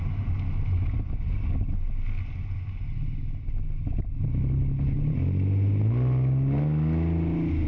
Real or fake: real